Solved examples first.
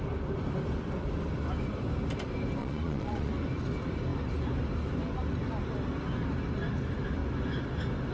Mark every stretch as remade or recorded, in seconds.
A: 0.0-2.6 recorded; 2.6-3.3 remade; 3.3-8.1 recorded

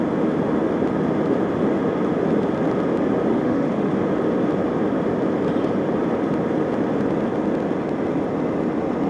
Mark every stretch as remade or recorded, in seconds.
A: 0.0-3.3 recorded; 3.3-3.9 remade; 3.9-9.1 recorded

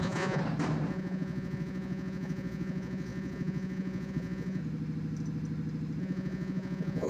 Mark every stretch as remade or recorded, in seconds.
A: 0.0-0.4 remade; 0.4-0.9 recorded; 0.9-4.6 remade; 4.6-6.0 recorded; 6.0-7.1 remade

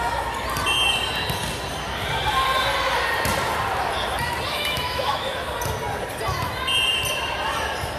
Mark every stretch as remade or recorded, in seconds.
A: 0.0-4.5 recorded; 4.5-5.5 remade; 5.5-8.0 recorded